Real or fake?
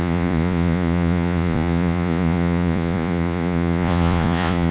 fake